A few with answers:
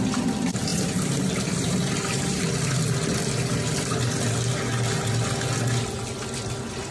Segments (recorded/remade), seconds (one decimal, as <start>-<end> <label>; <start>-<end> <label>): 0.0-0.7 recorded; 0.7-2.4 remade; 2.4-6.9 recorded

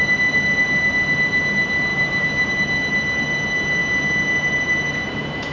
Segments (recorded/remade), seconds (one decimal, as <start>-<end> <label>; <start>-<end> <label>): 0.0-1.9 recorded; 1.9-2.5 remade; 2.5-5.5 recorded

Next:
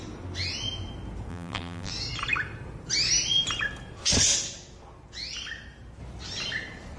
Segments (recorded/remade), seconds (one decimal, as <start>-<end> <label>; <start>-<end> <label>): 0.0-1.3 recorded; 1.3-1.9 remade; 1.9-7.0 recorded